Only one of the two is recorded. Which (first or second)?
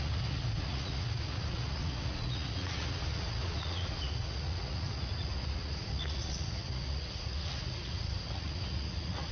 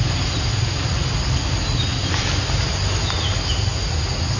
second